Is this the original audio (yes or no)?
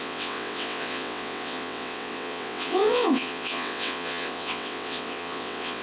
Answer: no